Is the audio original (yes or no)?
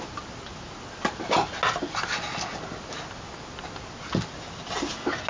yes